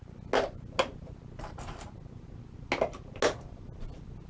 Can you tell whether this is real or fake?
real